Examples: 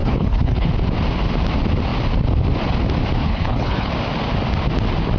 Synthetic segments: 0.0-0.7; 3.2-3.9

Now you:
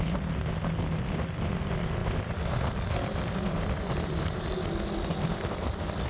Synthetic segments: none

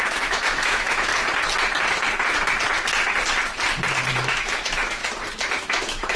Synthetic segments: 0.0-1.1; 4.1-5.0; 5.6-6.2

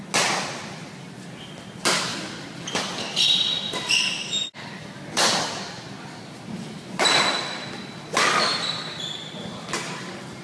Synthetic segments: none

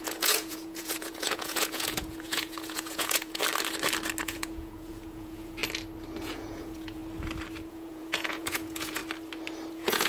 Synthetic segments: 0.0-3.4; 4.2-5.6; 6.2-7.0; 7.7-9.0; 9.7-10.1

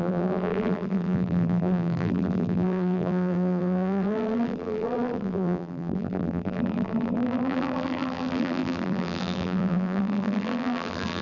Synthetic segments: 0.0-11.2

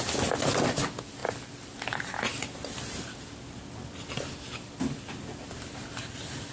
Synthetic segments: none

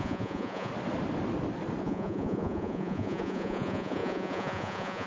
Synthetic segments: 0.0-0.7; 1.8-5.1